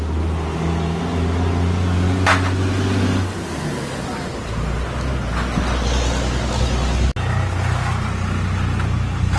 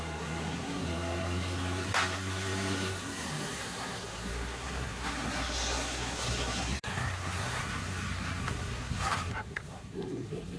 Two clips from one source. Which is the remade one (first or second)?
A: second